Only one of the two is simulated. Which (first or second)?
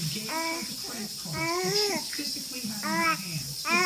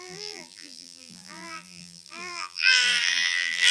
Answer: second